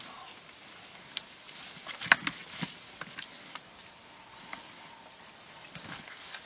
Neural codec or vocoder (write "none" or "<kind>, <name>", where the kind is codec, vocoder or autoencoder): none